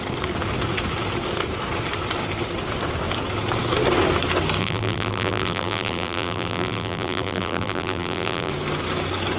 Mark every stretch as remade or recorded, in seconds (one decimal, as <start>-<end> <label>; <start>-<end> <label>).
0.0-4.6 recorded; 4.6-8.5 remade; 8.5-9.4 recorded